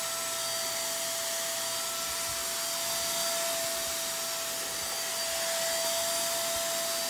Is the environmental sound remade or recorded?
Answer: recorded